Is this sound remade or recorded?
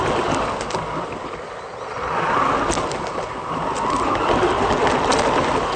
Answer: recorded